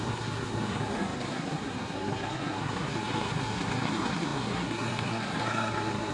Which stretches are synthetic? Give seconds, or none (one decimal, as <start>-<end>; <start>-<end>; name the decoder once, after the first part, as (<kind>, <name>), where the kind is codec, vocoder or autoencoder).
0.0-6.1 (codec, SNAC)

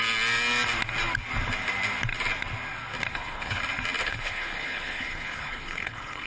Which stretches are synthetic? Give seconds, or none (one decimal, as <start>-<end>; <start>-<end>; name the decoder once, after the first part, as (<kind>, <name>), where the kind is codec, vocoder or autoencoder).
3.1-3.6 (codec, HILCodec); 4.0-6.3

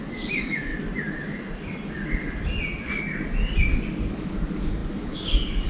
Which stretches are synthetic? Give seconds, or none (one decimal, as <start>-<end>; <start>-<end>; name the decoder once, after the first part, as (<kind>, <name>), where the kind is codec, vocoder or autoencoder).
0.0-0.7 (codec, DAC); 4.1-5.7

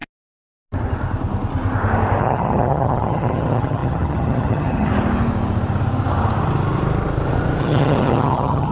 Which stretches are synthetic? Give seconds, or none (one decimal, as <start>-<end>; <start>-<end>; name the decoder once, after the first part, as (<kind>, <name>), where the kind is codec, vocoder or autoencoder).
2.2-4.9 (vocoder, HiFi-GAN); 7.6-8.7

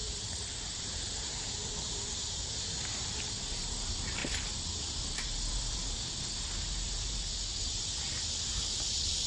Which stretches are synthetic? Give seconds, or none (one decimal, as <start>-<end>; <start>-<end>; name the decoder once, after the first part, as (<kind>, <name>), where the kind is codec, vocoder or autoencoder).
0.0-3.3 (vocoder, BigVGAN v2)

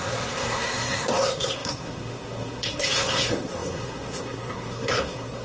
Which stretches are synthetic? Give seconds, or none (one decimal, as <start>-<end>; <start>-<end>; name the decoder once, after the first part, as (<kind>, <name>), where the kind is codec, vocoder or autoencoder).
0.0-5.4 (codec, SNAC)

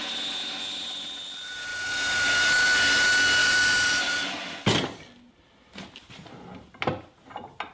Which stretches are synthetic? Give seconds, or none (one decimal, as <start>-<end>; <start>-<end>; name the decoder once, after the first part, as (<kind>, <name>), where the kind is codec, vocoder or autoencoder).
3.4-4.4 (vocoder, BigVGAN v2)